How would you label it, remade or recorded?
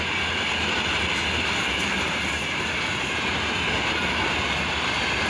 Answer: recorded